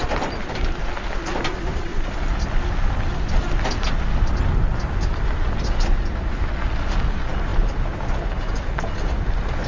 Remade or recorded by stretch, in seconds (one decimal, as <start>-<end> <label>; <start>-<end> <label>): 0.0-9.7 recorded